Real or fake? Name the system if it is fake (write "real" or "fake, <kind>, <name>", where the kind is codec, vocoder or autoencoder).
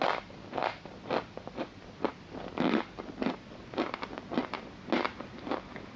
real